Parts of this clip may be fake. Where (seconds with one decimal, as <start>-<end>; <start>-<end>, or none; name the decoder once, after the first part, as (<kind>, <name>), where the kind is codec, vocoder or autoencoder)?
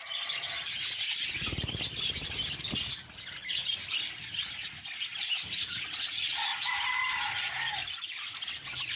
none